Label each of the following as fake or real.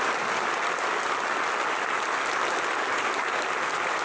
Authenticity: real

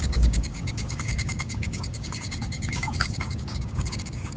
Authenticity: fake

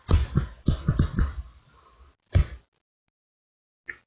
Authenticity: real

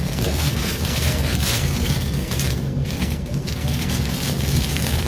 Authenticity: fake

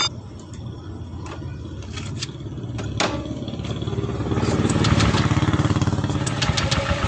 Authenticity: real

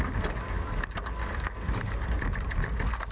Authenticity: real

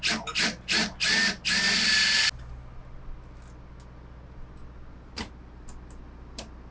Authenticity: real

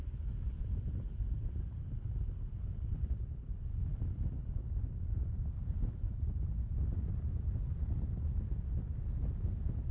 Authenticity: real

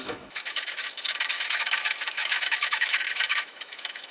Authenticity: fake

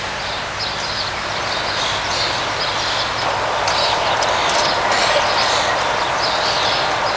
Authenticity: real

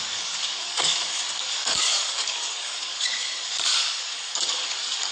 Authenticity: fake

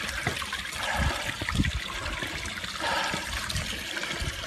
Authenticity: real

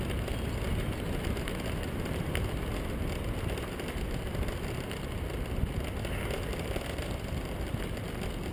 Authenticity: real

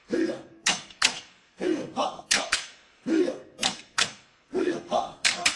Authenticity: fake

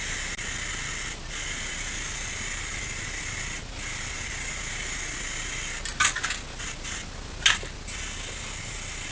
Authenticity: real